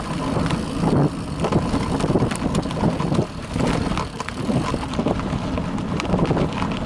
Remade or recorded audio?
recorded